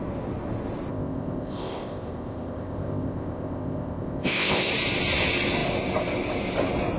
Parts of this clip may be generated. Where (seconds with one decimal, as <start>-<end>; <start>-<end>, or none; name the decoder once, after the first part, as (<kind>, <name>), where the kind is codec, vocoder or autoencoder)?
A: 0.9-4.7 (codec, ZipCodec)